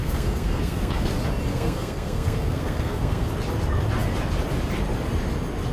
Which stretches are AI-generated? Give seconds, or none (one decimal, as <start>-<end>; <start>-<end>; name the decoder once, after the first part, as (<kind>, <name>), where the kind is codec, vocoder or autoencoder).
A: 0.0-1.1 (codec, SNAC); 1.5-3.3

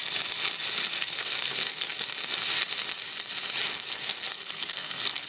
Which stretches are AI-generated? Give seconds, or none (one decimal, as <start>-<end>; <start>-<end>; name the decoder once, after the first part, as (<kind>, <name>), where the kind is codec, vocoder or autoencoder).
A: 0.9-1.9 (codec, SNAC); 3.7-5.3